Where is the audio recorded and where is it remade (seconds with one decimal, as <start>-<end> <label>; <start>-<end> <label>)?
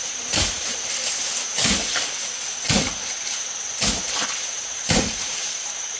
0.0-1.0 remade; 1.0-4.6 recorded; 4.6-6.0 remade